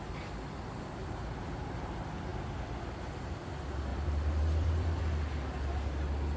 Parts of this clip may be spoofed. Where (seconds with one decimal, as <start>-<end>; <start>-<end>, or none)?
3.9-5.0